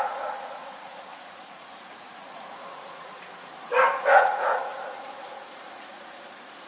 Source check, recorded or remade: remade